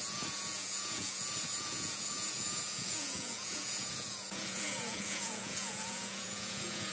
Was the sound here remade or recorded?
remade